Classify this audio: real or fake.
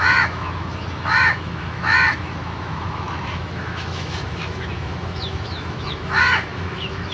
fake